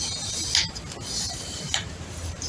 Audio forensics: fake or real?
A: fake